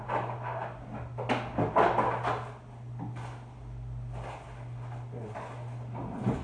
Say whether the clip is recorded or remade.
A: recorded